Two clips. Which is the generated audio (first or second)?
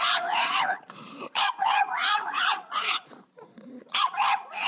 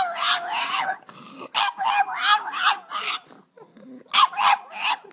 first